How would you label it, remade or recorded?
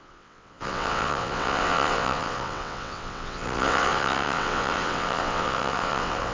remade